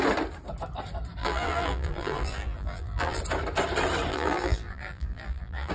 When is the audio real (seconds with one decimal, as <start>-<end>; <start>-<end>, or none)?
0.0-1.2; 3.2-4.1